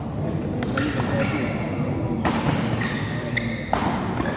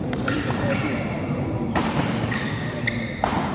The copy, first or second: second